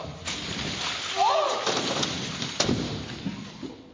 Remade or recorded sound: recorded